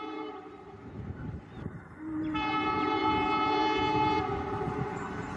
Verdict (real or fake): fake